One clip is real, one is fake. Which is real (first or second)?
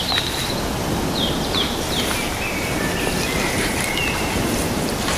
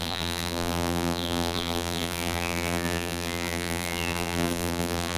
first